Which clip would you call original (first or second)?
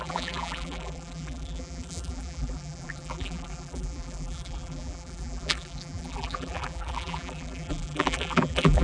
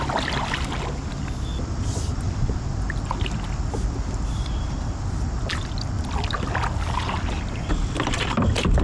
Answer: second